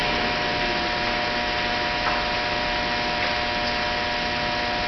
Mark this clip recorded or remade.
recorded